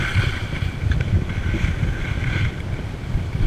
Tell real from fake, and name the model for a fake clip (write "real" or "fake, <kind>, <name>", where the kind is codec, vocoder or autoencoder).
real